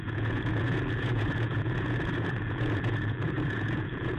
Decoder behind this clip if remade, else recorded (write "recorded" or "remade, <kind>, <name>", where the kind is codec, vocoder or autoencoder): remade, vocoder, Vocos